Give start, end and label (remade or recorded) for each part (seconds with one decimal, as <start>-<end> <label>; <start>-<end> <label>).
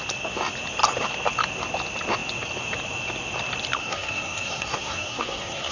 0.0-3.8 recorded; 3.8-5.7 remade